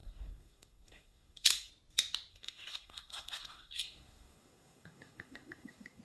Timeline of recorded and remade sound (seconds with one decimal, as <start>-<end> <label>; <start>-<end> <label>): 0.0-1.7 remade; 1.7-2.3 recorded; 2.3-6.0 remade